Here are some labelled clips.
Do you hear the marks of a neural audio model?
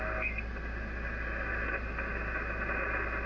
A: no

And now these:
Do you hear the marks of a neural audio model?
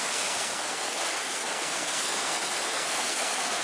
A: yes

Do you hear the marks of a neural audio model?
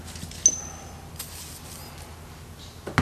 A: no